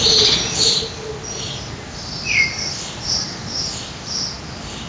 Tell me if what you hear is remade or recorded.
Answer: recorded